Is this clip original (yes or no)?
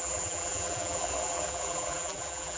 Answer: no